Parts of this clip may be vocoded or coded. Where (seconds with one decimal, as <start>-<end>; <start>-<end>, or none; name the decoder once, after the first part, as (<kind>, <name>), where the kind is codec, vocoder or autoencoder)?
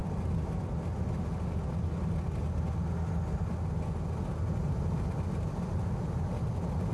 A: none